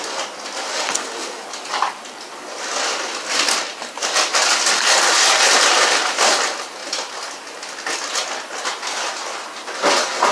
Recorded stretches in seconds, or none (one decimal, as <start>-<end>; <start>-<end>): 0.0-0.7; 1.4-10.3